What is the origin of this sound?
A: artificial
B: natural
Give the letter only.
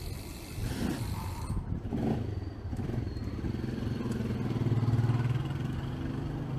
B